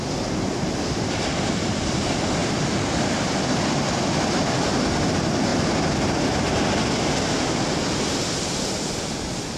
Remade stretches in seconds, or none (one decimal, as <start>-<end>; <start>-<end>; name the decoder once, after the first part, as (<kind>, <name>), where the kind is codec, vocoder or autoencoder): 5.5-6.7 (vocoder, BigVGAN v2)